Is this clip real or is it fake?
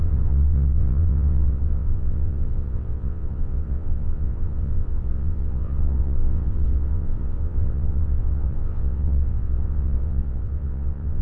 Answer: fake